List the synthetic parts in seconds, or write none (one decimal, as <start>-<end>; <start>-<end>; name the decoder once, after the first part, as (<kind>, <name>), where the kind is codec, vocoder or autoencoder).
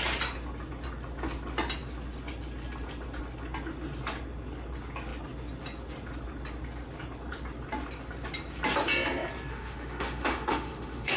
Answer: 9.5-11.2 (autoencoder, DAC-VAE)